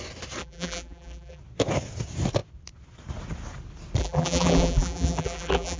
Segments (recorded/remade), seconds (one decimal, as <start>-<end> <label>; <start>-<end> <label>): 0.0-0.4 recorded; 0.4-1.4 remade; 1.4-4.0 recorded; 4.0-5.8 remade